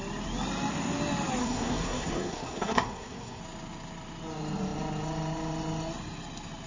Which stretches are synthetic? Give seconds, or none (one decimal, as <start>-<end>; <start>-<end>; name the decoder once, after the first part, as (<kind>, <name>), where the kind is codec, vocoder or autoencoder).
1.4-3.4 (codec, SNAC)